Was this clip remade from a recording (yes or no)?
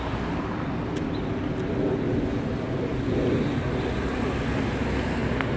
no